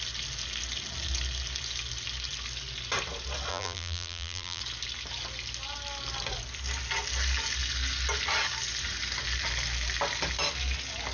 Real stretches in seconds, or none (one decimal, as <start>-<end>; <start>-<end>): 0.0-3.5; 4.6-11.1